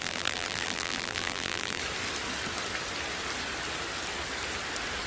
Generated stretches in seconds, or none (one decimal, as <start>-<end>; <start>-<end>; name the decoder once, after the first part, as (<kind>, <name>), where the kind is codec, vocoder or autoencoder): 0.0-1.8 (vocoder, BigVGAN v2)